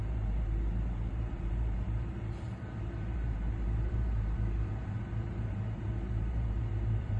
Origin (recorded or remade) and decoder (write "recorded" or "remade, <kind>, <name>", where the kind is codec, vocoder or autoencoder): remade, vocoder, BigVGAN v2